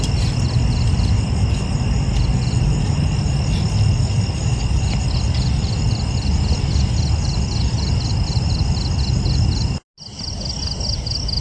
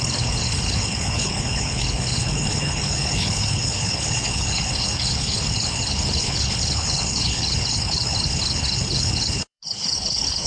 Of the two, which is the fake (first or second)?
second